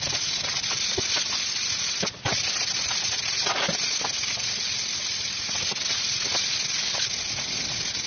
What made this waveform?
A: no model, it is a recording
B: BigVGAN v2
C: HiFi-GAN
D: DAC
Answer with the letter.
A